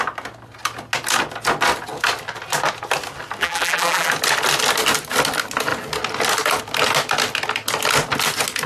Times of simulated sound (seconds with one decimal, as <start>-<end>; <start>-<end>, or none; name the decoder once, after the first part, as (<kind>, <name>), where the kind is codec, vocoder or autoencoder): 3.4-4.1 (vocoder, BigVGAN v2)